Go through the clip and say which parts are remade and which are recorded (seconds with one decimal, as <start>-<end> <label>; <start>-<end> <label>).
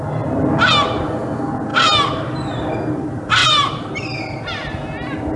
0.0-3.4 recorded; 3.4-4.0 remade; 4.0-5.4 recorded